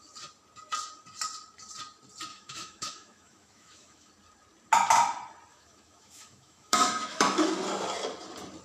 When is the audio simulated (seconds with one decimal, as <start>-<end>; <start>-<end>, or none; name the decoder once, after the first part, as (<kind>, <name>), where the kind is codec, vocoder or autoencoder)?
2.3-4.1 (autoencoder, DAC-VAE); 5.5-7.5